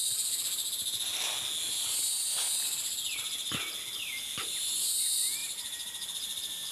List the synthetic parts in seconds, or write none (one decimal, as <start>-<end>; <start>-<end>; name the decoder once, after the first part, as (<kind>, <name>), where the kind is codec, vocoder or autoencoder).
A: 5.4-6.7 (vocoder, BigVGAN v2)